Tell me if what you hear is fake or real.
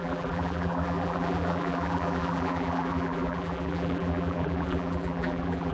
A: fake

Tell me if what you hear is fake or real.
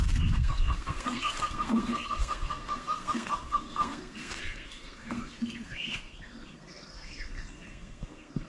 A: fake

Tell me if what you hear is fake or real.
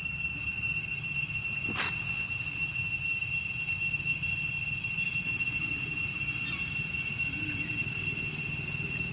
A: real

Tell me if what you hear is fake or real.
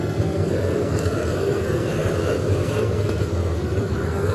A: fake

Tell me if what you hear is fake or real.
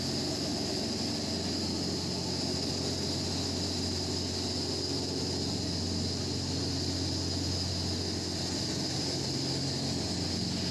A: real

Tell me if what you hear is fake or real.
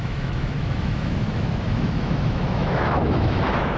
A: fake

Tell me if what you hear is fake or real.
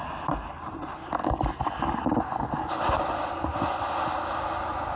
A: real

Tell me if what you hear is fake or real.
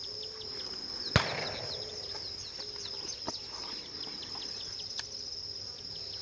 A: real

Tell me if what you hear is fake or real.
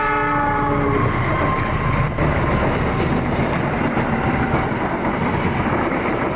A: real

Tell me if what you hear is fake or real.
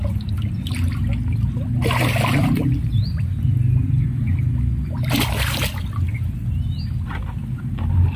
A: real